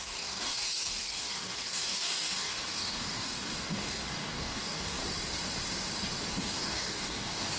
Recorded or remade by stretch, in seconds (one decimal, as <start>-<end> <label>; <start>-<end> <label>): 0.0-5.0 remade; 5.0-6.3 recorded; 6.3-7.6 remade